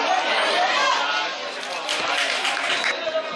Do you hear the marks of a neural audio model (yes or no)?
no